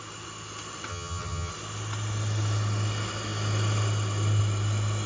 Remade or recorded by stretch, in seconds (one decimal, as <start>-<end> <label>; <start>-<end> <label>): 0.0-0.9 recorded; 0.9-1.5 remade; 1.5-5.1 recorded